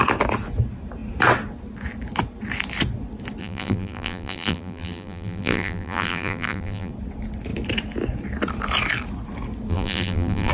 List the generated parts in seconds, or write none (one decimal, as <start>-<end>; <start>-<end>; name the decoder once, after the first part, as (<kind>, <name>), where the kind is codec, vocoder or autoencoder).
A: 3.4-6.9 (vocoder, BigVGAN v2); 9.7-10.5